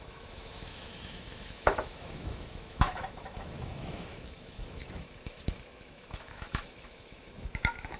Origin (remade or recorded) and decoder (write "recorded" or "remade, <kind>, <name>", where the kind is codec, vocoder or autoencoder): remade, autoencoder, DAC-VAE